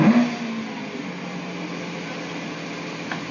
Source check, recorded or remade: recorded